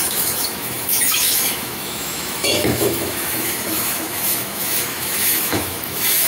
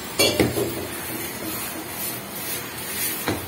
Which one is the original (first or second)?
second